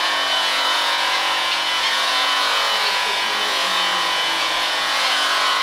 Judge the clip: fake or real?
fake